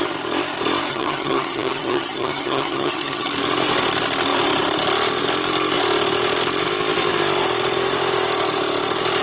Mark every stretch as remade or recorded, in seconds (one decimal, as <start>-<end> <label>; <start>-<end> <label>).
0.0-0.9 recorded; 0.9-3.3 remade; 3.3-9.2 recorded